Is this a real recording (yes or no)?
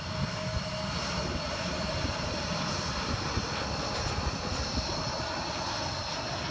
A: yes